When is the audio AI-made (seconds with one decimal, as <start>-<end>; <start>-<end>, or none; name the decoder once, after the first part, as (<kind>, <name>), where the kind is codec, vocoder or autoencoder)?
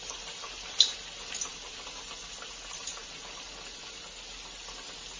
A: none